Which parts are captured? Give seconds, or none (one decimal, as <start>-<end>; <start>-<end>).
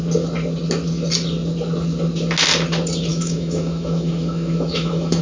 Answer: 0.0-3.1